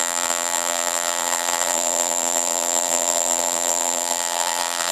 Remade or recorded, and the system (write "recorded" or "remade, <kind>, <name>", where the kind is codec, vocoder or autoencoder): remade, vocoder, BigVGAN v2